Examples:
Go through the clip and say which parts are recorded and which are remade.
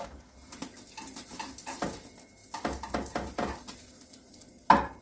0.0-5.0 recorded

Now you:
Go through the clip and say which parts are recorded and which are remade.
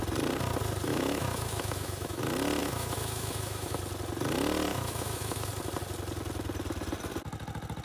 0.0-0.9 recorded; 0.9-2.2 remade; 2.2-2.6 recorded; 2.6-3.8 remade; 3.8-4.7 recorded; 4.7-5.5 remade; 5.5-7.8 recorded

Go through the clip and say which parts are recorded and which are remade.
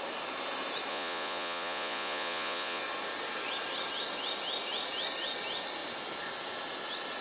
0.0-0.9 recorded; 0.9-2.8 remade; 2.8-7.2 recorded